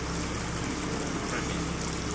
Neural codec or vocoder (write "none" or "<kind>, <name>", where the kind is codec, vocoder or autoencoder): none